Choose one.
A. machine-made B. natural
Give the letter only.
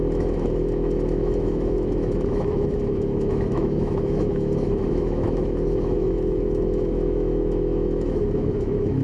A